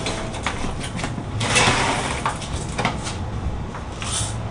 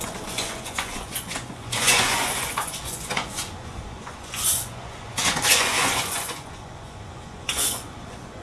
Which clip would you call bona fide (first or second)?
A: first